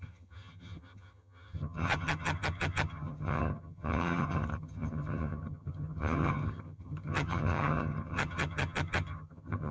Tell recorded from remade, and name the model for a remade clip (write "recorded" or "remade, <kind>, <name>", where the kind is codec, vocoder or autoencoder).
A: remade, vocoder, HiFi-GAN